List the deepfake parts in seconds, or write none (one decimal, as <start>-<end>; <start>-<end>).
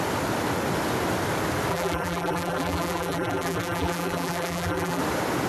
1.7-5.0